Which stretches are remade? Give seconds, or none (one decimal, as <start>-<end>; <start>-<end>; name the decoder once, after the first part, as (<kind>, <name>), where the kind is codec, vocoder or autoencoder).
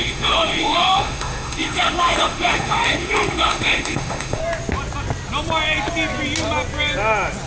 0.0-4.4 (autoencoder, DAC-VAE)